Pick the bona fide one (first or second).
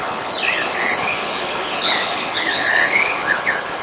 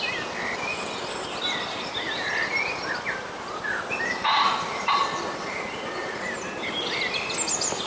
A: second